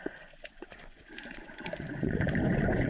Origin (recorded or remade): remade